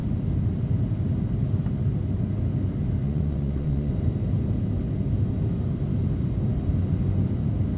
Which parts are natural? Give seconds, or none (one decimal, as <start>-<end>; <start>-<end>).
0.0-3.0; 3.9-7.8